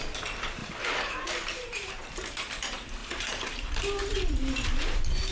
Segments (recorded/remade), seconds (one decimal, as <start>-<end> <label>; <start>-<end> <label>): 0.0-0.6 recorded; 0.6-1.9 remade; 1.9-3.0 recorded; 3.0-4.3 remade; 4.3-5.3 recorded